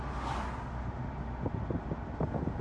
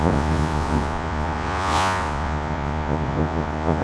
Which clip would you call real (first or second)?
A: first